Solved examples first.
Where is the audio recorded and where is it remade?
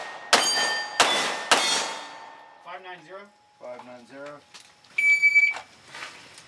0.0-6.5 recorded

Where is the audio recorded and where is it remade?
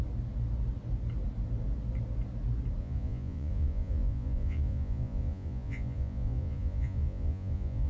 0.0-2.8 recorded; 2.8-7.9 remade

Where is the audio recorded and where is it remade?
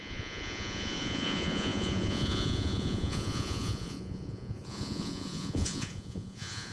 0.0-6.7 remade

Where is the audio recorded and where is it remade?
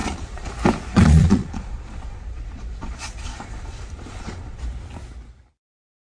0.0-0.5 remade; 0.5-0.9 recorded; 0.9-4.6 remade; 4.6-6.1 recorded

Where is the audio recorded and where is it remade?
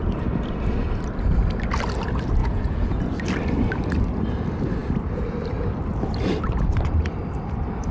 0.0-2.4 recorded; 2.4-3.0 remade; 3.0-7.9 recorded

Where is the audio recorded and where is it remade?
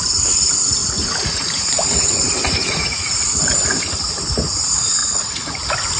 0.0-0.8 recorded; 0.8-3.8 remade; 3.8-5.0 recorded; 5.0-5.6 remade; 5.6-6.0 recorded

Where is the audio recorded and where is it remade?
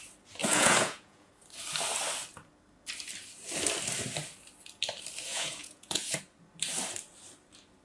0.0-0.4 recorded; 0.4-1.3 remade; 1.3-5.3 recorded; 5.3-6.2 remade; 6.2-7.8 recorded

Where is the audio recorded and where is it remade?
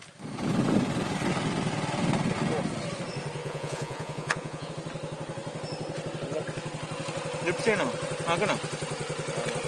0.0-3.4 recorded; 3.4-4.7 remade; 4.7-9.7 recorded